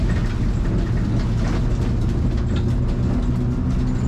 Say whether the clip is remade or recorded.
recorded